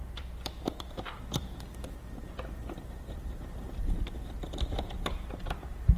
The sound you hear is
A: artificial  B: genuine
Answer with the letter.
A